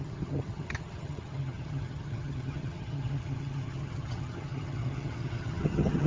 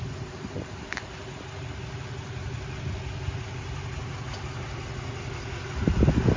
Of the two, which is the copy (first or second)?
first